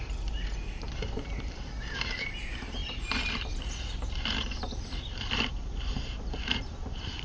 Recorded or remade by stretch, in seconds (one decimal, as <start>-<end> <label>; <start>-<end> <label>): 0.0-7.2 remade